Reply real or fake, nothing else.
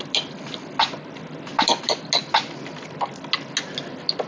real